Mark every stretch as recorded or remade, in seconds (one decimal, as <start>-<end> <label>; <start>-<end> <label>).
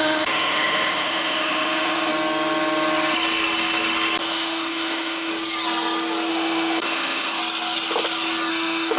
0.0-2.1 remade; 2.1-4.2 recorded; 4.2-5.3 remade; 5.3-6.3 recorded; 6.3-7.4 remade; 7.4-8.5 recorded; 8.5-9.0 remade